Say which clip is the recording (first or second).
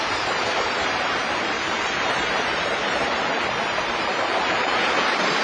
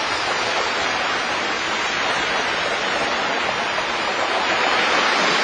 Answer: second